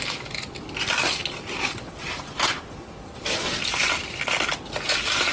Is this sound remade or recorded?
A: recorded